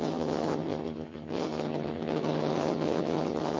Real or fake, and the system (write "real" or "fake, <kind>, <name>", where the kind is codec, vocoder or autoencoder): fake, vocoder, HiFi-GAN